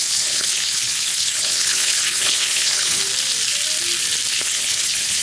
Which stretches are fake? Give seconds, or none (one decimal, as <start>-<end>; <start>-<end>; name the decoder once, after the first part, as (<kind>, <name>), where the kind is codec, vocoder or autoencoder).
0.0-3.0 (codec, HILCodec); 4.3-5.2